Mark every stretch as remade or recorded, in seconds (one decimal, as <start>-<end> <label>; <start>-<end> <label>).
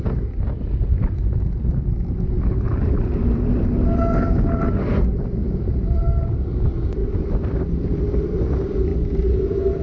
0.0-5.4 recorded; 5.4-6.0 remade; 6.0-9.8 recorded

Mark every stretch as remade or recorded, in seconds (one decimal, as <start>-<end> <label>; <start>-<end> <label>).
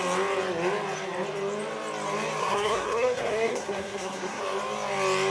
0.0-2.4 recorded; 2.4-4.4 remade; 4.4-5.3 recorded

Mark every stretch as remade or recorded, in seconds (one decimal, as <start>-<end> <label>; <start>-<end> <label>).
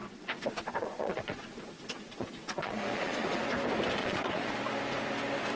0.0-3.4 remade; 3.4-4.0 recorded; 4.0-4.5 remade; 4.5-5.6 recorded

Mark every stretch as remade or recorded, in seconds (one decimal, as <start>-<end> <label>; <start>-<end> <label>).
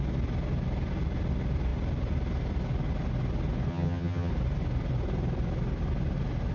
0.0-3.7 recorded; 3.7-4.3 remade; 4.3-6.5 recorded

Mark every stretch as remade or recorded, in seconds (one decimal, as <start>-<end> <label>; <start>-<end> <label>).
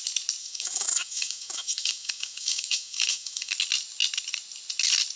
0.0-0.4 recorded; 0.4-3.5 remade; 3.5-5.2 recorded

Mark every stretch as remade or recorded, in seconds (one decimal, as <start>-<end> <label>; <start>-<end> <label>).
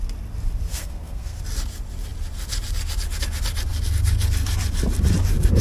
0.0-0.7 recorded; 0.7-1.4 remade; 1.4-5.6 recorded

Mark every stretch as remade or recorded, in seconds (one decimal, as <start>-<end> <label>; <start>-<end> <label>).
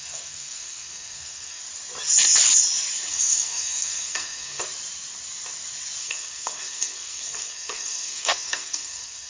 0.0-1.6 remade; 1.6-3.1 recorded; 3.1-4.6 remade; 4.6-6.0 recorded; 6.0-9.3 remade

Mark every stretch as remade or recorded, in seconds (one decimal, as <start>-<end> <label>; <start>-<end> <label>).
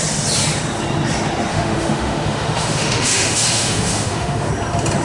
0.0-1.5 recorded; 1.5-4.5 remade; 4.5-5.0 recorded